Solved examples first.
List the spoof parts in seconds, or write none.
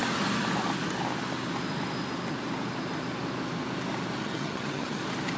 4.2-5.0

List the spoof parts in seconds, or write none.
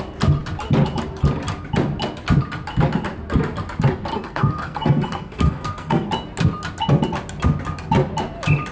4.1-6.1